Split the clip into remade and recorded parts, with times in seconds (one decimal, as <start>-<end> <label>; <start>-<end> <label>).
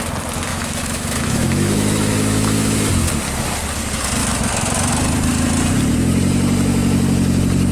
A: 0.0-0.5 recorded; 0.5-2.9 remade; 2.9-4.2 recorded; 4.2-4.9 remade; 4.9-7.7 recorded